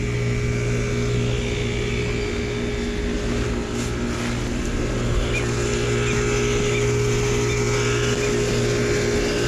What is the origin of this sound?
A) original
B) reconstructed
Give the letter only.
A